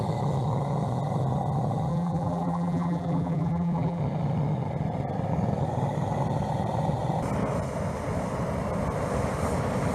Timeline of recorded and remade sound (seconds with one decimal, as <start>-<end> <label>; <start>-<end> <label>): 0.0-1.9 recorded; 1.9-4.0 remade; 4.0-9.9 recorded